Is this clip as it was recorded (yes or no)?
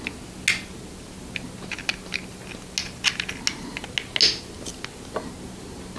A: yes